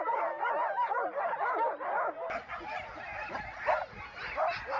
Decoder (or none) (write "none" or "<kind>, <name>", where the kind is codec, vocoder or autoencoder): none